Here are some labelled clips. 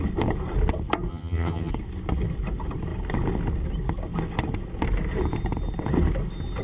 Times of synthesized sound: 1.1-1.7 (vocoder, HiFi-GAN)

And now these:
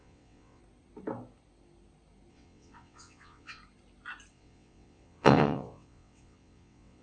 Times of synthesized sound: 0.0-0.6 (vocoder, WaveNeXt); 2.3-3.6; 4.3-7.0

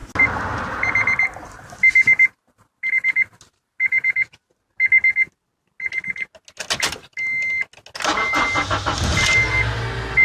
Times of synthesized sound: none

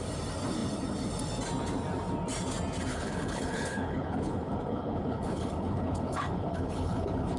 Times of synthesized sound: 2.9-7.4 (codec, HILCodec)

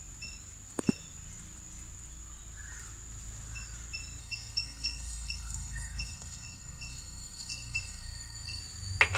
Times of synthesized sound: 4.2-8.6 (codec, SNAC)

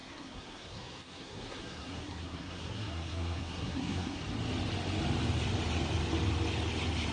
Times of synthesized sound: 0.0-4.2 (codec, SNAC)

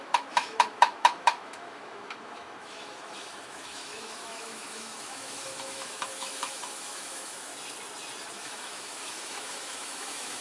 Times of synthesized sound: 0.0-7.5 (autoencoder, DAC-VAE); 8.3-10.4